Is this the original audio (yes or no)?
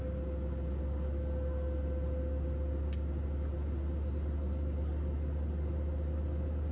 yes